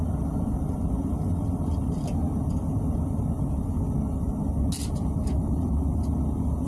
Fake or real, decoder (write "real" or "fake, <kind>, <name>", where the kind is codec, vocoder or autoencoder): real